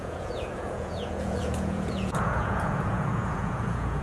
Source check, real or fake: fake